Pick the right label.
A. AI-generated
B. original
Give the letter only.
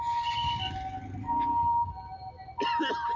B